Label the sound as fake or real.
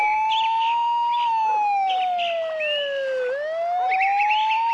real